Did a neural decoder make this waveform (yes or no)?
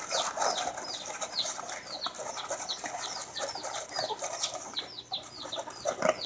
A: no